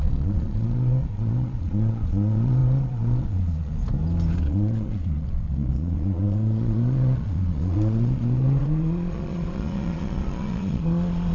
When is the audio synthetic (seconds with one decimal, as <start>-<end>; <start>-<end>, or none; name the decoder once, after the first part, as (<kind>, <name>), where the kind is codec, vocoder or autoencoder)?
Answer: 0.0-3.8 (vocoder, Vocos); 4.4-11.3